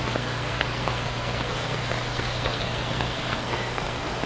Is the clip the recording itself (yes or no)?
no